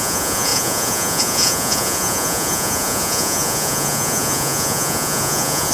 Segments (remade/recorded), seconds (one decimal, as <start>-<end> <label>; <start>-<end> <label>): 0.0-5.7 remade